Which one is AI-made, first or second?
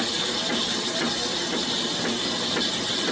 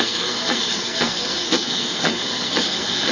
second